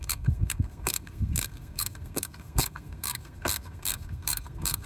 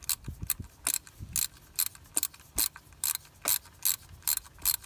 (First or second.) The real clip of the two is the second